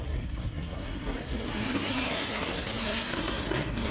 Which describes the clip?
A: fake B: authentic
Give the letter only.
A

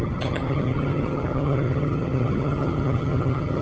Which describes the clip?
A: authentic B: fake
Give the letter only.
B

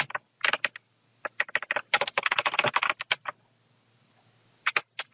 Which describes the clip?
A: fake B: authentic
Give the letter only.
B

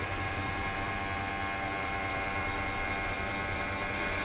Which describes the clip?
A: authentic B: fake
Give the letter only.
B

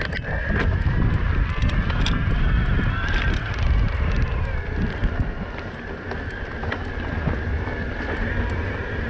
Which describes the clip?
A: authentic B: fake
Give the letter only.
A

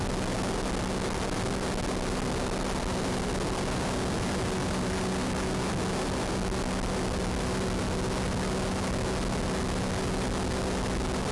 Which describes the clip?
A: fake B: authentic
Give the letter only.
B